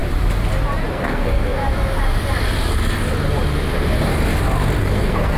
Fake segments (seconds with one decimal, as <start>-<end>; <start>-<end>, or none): 0.9-1.6; 4.8-5.4